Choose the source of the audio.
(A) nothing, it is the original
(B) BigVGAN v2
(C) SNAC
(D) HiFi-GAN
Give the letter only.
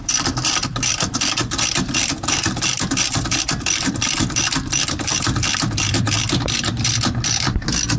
B